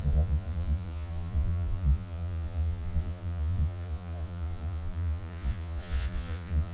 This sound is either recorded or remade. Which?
remade